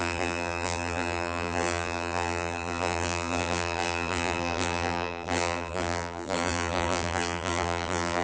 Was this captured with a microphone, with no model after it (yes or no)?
no